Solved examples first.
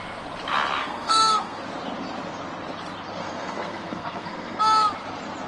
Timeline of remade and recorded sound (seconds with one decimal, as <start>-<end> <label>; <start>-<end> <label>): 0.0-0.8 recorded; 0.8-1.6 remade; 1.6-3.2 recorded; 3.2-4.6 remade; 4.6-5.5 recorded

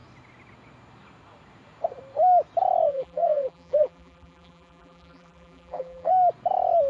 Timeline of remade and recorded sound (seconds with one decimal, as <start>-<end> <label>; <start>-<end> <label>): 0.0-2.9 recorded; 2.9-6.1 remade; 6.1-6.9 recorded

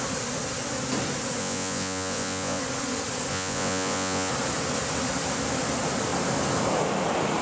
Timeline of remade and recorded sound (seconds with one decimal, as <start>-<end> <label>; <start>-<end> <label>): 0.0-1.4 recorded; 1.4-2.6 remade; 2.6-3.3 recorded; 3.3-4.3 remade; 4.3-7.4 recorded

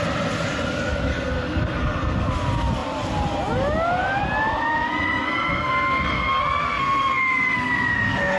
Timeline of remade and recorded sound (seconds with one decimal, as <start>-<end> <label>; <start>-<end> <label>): 0.0-1.1 recorded; 1.1-2.3 remade; 2.3-4.7 recorded; 4.7-8.4 remade